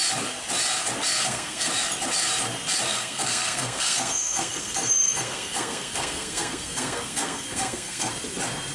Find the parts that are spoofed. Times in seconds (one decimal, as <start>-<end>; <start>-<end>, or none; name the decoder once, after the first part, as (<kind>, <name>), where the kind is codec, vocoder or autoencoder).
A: 1.2-1.7 (codec, SNAC); 2.9-8.1